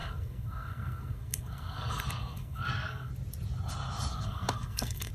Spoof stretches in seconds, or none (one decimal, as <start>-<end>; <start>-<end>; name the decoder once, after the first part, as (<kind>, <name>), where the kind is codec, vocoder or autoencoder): 0.0-3.1 (codec, SNAC); 4.1-5.1